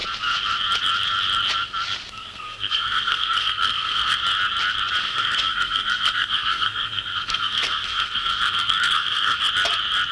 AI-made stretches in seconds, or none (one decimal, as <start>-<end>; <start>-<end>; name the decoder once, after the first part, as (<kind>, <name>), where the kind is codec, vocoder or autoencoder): 2.1-4.2 (codec, SNAC); 5.0-9.4